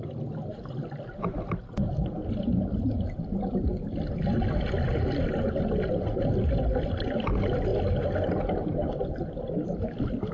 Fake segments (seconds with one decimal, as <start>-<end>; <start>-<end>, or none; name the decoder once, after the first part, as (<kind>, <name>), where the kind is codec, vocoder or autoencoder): none